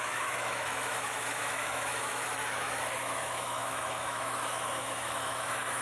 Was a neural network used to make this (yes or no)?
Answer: yes